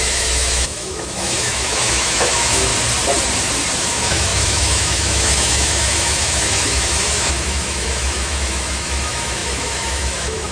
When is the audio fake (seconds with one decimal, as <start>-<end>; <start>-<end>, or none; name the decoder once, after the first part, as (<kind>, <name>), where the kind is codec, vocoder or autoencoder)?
0.0-2.7 (autoencoder, DAC-VAE); 3.8-10.5